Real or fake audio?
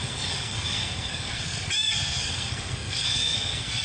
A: fake